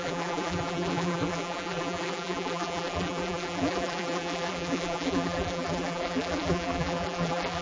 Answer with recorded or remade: remade